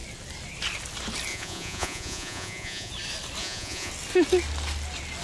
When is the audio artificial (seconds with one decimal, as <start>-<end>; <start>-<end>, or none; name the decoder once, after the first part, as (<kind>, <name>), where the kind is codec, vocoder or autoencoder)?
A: 1.3-2.9 (vocoder, Vocos); 3.4-3.9